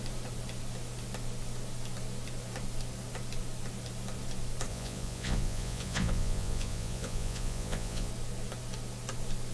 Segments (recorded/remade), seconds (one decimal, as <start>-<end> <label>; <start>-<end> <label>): 0.0-4.7 recorded; 4.7-8.1 remade; 8.1-9.5 recorded